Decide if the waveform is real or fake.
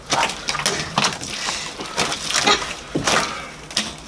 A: real